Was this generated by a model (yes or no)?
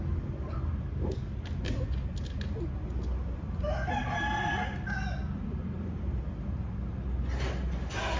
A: no